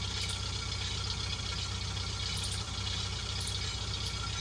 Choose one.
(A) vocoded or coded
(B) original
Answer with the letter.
B